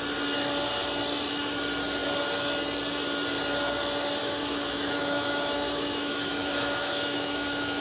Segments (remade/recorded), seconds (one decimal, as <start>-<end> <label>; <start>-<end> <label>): 0.0-4.2 recorded; 4.2-7.8 remade